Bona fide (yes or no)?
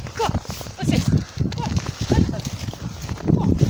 yes